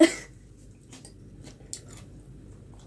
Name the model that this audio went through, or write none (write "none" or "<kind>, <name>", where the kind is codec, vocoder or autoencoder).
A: none